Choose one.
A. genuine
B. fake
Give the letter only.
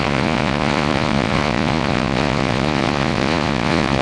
B